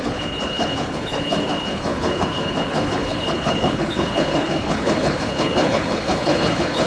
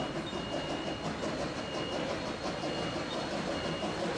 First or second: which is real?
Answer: second